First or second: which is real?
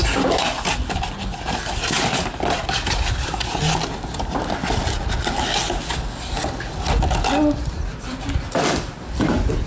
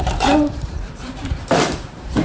first